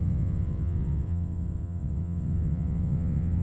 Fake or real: fake